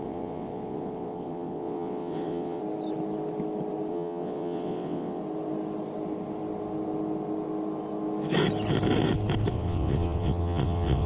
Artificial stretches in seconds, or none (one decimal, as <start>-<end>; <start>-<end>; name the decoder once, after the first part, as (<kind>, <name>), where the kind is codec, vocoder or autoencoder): 0.0-2.6 (vocoder, WaveNeXt); 3.9-5.2; 9.5-11.1